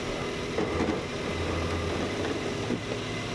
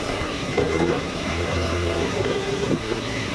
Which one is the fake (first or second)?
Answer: second